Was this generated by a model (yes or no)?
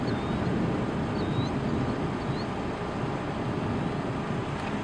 no